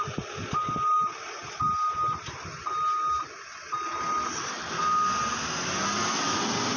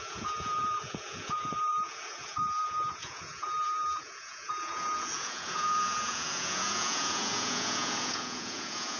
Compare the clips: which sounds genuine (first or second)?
first